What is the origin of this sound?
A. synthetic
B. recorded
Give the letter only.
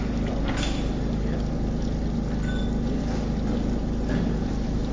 B